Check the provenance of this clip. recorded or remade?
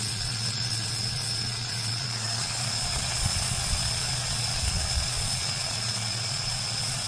remade